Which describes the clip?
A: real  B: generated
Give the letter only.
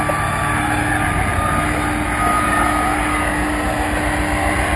A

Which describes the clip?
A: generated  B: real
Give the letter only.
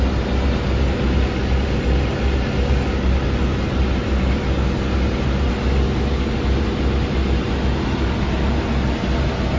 B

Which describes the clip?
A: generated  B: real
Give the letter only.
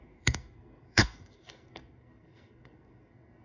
A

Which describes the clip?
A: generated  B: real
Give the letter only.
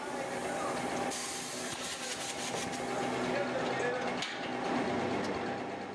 B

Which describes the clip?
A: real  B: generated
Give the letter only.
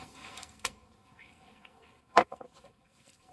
B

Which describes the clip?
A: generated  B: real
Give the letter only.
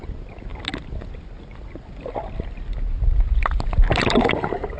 B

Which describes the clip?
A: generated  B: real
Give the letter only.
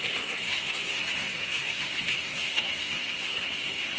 A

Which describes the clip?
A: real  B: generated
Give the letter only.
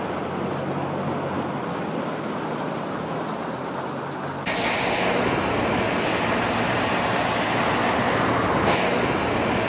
A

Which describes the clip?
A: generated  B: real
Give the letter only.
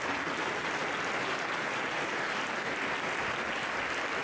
B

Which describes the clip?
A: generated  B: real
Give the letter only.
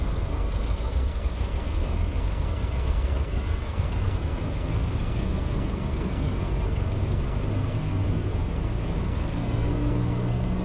A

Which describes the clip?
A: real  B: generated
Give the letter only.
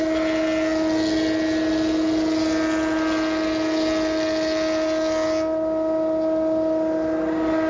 A